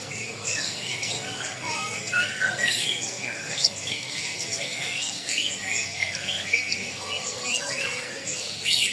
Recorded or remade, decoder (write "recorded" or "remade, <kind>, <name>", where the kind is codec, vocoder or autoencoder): remade, codec, SNAC